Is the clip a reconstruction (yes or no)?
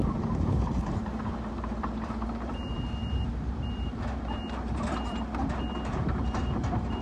yes